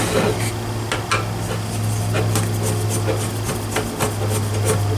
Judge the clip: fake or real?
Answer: real